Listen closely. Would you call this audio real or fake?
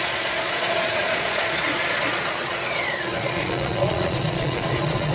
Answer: fake